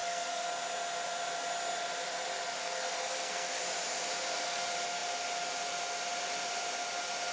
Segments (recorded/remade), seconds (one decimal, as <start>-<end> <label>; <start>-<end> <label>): 0.0-0.5 remade; 0.5-2.6 recorded; 2.6-3.6 remade; 3.6-7.3 recorded